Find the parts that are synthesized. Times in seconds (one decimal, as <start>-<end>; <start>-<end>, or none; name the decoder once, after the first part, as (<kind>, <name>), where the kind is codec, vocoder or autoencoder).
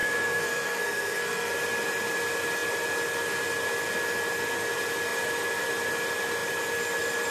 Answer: 0.0-1.5 (codec, SNAC)